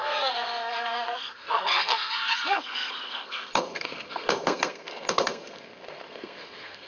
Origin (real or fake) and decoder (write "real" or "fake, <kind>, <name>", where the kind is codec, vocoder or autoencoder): fake, codec, SNAC